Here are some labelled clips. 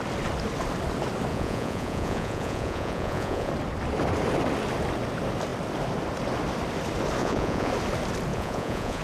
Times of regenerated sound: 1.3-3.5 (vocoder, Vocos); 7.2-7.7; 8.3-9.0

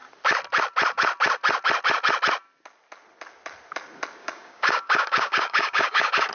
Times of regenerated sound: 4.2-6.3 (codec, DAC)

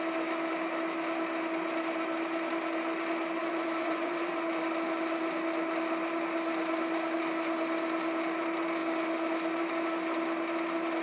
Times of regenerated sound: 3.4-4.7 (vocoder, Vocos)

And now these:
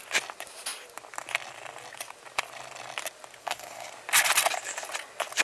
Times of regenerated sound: 3.4-3.9 (codec, SNAC)

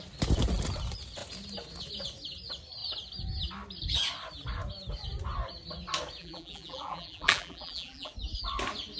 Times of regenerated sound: 6.2-8.1 (vocoder, BigVGAN v2)

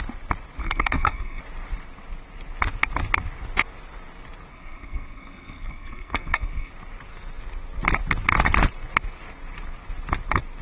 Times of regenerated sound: 0.6-1.4 (codec, SNAC); 4.5-6.7